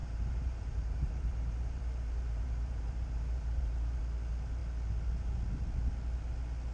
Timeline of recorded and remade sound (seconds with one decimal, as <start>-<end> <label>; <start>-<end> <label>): 0.0-4.0 remade; 4.0-6.7 recorded